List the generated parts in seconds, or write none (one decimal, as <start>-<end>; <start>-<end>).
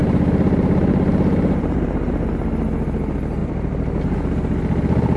0.0-2.3; 3.4-4.0